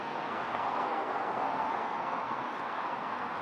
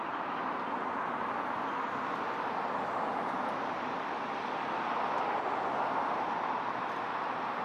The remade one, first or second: first